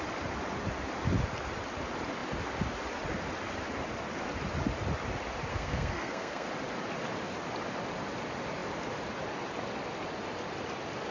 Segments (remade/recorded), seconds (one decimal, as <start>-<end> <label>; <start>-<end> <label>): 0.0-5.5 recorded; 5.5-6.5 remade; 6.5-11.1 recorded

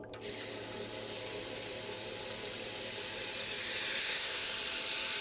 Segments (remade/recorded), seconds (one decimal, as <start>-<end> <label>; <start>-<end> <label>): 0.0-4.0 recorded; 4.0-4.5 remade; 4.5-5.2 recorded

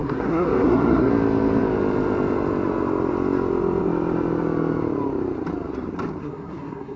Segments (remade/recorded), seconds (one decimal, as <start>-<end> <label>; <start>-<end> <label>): 0.0-1.1 remade; 1.1-6.2 recorded; 6.2-7.0 remade

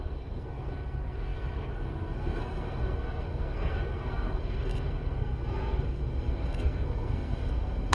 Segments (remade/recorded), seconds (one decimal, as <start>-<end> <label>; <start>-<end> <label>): 0.0-7.9 remade

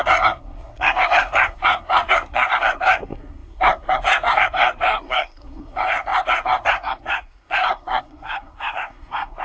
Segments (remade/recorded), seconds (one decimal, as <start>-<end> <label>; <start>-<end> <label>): 0.0-9.4 remade

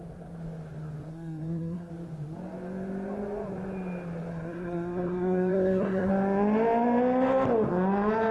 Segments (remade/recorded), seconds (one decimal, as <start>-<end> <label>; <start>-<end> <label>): 0.0-1.1 recorded; 1.1-1.9 remade; 1.9-4.3 recorded; 4.3-6.1 remade; 6.1-8.3 recorded